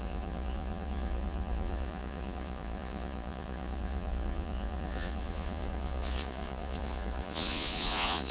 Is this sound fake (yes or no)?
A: yes